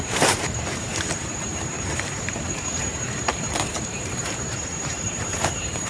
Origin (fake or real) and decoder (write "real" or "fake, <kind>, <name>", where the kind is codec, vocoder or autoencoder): fake, vocoder, BigVGAN v2